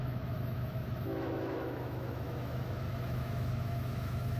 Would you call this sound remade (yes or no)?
yes